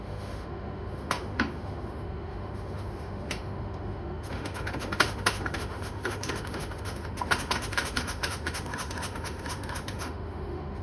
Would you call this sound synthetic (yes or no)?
yes